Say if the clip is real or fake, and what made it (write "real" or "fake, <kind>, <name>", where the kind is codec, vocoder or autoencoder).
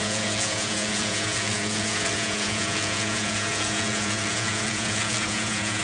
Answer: fake, vocoder, Vocos